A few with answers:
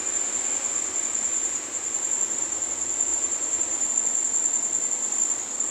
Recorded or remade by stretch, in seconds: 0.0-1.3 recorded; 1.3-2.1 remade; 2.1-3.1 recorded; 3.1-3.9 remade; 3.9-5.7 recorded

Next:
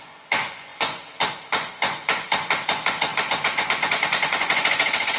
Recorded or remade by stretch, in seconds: 0.0-5.2 remade

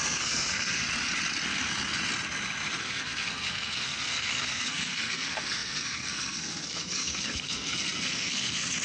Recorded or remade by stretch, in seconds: 0.0-0.8 remade; 0.8-2.8 recorded; 2.8-8.8 remade